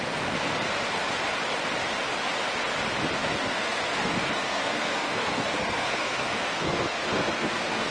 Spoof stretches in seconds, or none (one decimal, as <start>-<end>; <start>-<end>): 3.2-7.9